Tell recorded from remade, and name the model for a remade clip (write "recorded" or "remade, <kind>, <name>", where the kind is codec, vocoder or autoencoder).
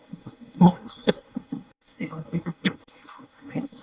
remade, codec, SNAC